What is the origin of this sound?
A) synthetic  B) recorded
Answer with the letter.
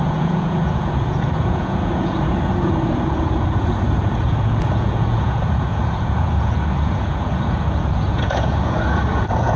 A